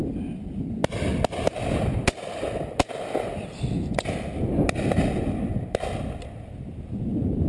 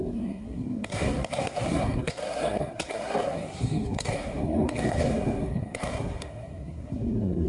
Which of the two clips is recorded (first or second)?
first